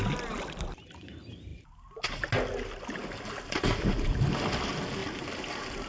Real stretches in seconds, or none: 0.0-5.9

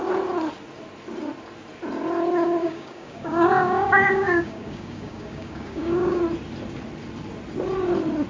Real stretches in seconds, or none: 0.0-2.6; 6.2-8.3

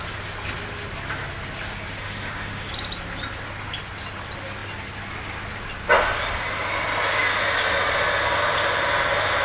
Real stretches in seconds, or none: 0.0-2.0; 2.7-9.4

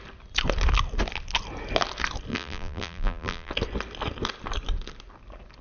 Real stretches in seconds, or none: 0.0-2.3; 3.5-5.6

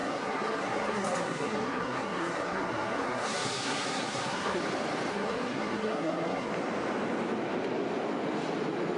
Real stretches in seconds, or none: 4.6-5.1; 6.5-9.0

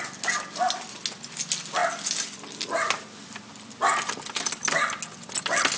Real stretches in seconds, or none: 0.0-5.8

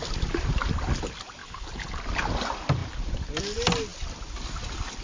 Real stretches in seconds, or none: 0.0-1.4; 2.0-5.0

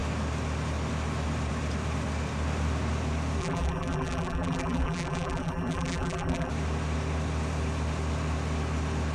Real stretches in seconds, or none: 0.0-3.4; 6.5-9.1